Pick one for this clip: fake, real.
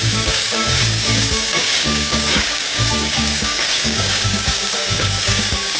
fake